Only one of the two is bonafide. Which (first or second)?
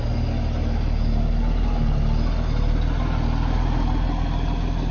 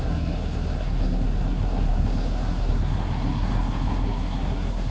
first